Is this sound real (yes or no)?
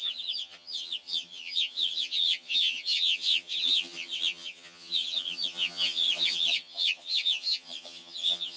no